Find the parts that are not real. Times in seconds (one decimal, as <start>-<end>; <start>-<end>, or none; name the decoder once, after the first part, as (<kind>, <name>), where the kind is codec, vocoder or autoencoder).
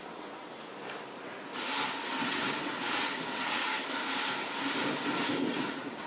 0.0-0.7 (vocoder, WaveNeXt); 2.2-3.6; 5.5-6.1